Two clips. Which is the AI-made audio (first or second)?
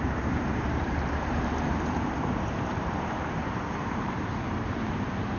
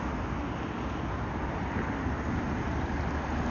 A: first